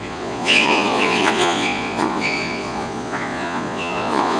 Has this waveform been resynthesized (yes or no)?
yes